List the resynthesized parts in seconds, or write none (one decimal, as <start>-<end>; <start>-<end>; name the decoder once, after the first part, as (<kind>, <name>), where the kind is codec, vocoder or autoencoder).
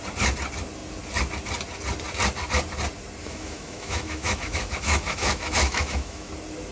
3.2-6.3 (autoencoder, DAC-VAE)